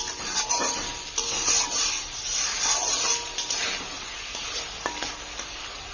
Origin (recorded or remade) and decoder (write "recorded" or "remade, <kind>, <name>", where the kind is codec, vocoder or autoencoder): recorded